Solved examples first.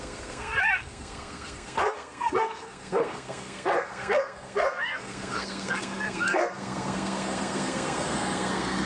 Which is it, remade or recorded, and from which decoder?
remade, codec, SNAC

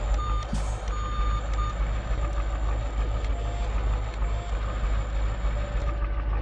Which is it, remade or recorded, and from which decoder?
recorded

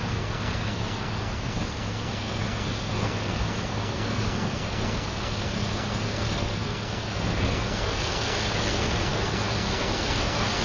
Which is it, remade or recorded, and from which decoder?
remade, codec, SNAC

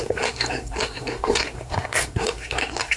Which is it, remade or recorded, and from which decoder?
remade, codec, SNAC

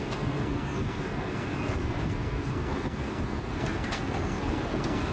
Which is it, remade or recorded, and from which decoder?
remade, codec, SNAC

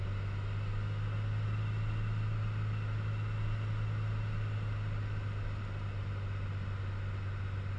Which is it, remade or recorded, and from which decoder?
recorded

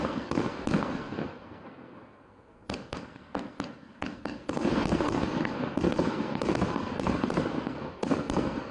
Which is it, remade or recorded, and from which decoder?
remade, codec, SNAC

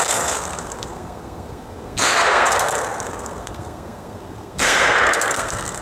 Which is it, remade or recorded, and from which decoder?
remade, codec, SNAC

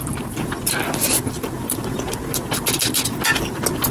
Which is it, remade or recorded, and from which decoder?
recorded